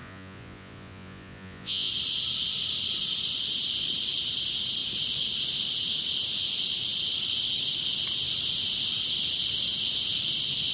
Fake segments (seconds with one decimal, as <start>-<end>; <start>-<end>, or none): 0.0-1.9